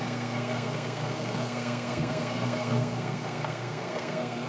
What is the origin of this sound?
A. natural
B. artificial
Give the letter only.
B